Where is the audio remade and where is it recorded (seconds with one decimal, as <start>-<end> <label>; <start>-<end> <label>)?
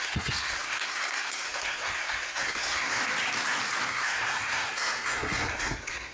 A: 0.0-3.0 remade; 3.0-3.9 recorded; 3.9-6.1 remade